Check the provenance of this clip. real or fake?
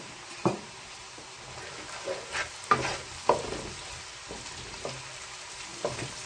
real